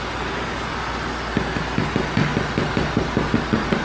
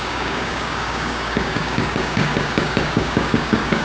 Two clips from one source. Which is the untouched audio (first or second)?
first